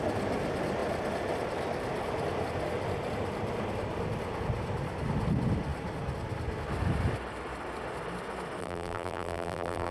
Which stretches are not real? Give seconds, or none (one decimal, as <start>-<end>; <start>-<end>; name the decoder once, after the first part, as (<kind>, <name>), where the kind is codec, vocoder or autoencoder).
8.6-9.9 (vocoder, BigVGAN v2)